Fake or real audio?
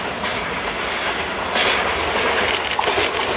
real